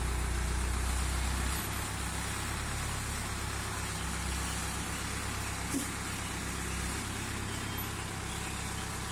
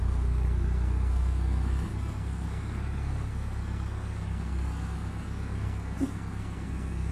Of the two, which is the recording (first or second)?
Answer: first